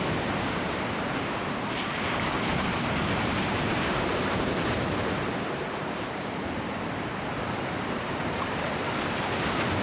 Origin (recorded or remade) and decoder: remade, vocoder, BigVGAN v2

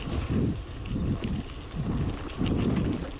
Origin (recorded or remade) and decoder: recorded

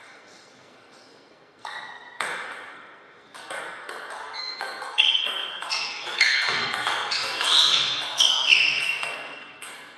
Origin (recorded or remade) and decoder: remade, codec, SNAC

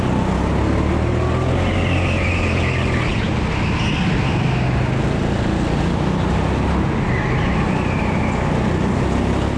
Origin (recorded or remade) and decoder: recorded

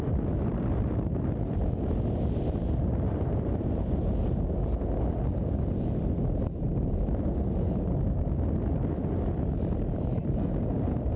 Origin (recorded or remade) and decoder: recorded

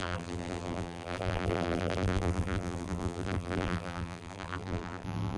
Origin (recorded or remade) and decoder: remade, vocoder, BigVGAN v2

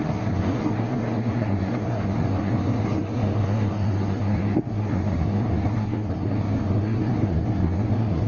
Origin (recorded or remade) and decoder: remade, codec, SNAC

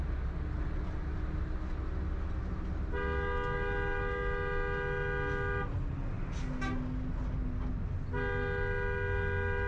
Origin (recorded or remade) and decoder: recorded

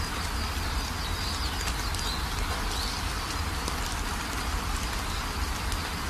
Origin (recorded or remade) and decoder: recorded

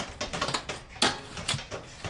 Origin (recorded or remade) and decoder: recorded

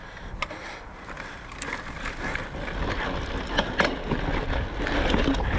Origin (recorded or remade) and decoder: recorded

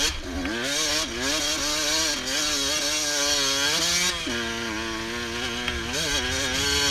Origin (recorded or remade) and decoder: recorded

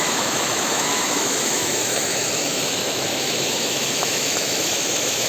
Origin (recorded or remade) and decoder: remade, autoencoder, DAC-VAE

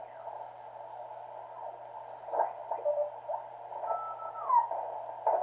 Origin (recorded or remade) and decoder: recorded